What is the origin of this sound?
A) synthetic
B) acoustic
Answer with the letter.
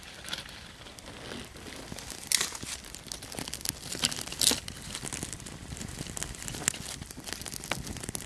B